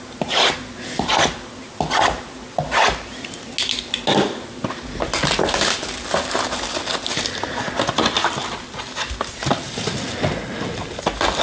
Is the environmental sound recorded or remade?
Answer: recorded